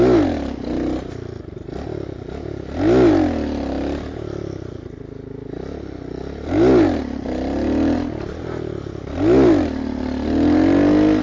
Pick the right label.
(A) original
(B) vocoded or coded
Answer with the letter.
A